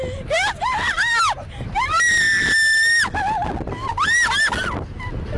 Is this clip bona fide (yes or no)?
yes